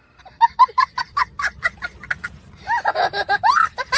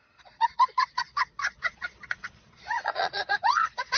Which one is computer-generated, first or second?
second